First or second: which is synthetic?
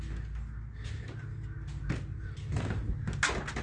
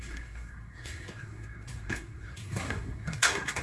second